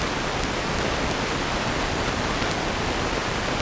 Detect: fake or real real